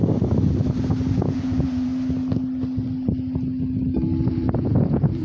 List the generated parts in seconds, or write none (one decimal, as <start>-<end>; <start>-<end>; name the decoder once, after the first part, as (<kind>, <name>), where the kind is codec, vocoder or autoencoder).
1.1-1.9 (vocoder, Vocos); 4.3-5.2